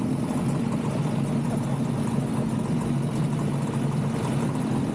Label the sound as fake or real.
real